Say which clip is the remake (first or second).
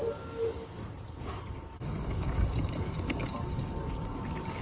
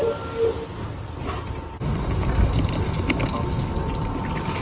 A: first